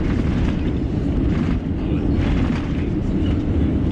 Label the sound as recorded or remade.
recorded